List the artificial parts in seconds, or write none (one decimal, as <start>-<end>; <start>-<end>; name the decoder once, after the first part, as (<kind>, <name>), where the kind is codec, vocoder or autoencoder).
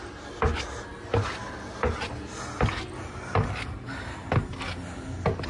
none